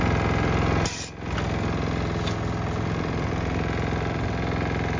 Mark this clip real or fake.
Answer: real